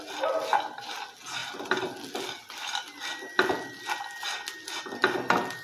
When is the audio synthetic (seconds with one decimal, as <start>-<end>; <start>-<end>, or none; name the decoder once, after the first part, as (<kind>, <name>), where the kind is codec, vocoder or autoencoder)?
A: none